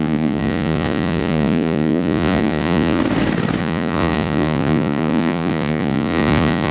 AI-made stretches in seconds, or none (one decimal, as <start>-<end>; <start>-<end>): 0.0-3.0; 3.6-6.7